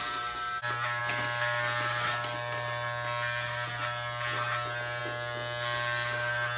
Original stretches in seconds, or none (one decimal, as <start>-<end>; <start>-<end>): 0.0-6.6